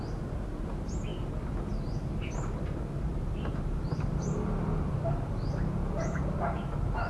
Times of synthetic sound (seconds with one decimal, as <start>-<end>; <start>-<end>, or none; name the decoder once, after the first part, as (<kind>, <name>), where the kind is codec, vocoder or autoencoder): none